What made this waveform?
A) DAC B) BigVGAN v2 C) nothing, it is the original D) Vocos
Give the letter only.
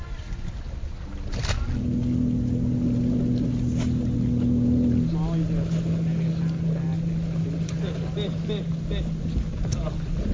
C